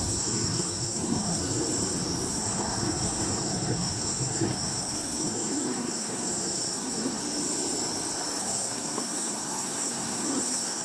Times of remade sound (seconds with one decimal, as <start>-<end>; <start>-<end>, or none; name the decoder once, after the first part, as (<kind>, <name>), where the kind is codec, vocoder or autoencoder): 0.0-1.6 (codec, SNAC); 2.3-7.2; 8.4-10.8